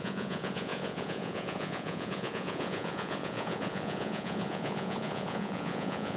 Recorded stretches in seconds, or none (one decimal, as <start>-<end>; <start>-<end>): none